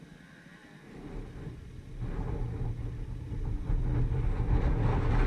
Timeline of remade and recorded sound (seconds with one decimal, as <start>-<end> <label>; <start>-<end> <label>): 0.0-5.3 recorded